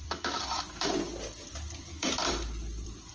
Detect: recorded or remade remade